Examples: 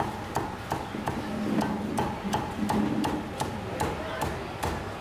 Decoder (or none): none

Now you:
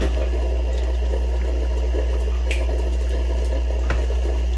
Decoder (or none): none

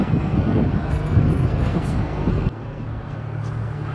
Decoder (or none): codec, SNAC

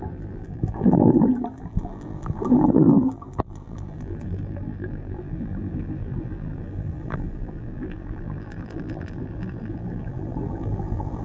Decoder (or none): vocoder, BigVGAN v2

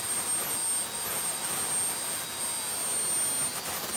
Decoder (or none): none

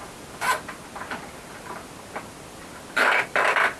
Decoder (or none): vocoder, BigVGAN v2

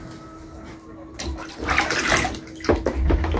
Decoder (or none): none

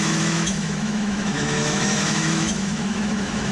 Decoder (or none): autoencoder, DAC-VAE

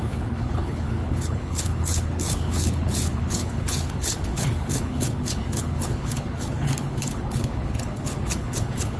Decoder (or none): codec, HILCodec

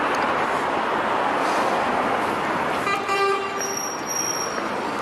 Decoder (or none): none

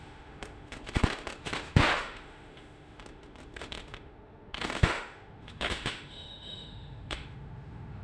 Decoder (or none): autoencoder, DAC-VAE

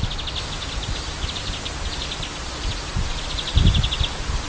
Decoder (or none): none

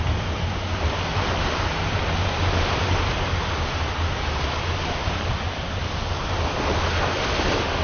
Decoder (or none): none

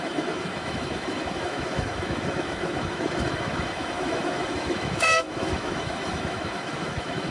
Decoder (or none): autoencoder, DAC-VAE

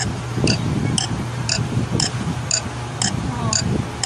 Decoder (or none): none